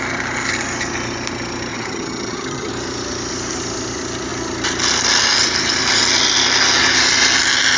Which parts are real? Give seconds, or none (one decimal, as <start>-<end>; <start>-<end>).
0.0-1.7; 2.7-7.8